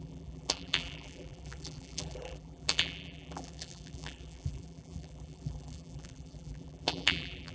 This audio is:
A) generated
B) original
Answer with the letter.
A